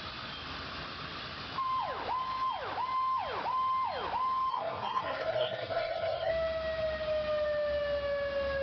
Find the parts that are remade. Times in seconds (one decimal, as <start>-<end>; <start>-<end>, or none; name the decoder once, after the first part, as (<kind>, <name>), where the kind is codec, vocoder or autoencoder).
4.5-6.3 (codec, SNAC)